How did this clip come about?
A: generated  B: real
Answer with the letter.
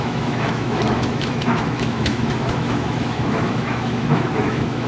A